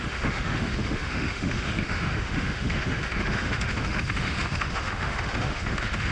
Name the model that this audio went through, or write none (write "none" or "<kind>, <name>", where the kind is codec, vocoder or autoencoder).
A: autoencoder, DAC-VAE